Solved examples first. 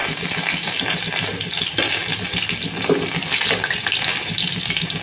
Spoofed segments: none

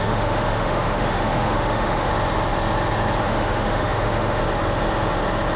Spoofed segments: 0.0-2.1 (autoencoder, DAC-VAE); 3.2-4.4